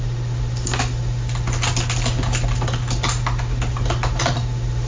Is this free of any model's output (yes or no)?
yes